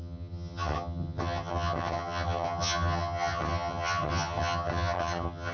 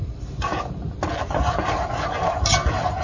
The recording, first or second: second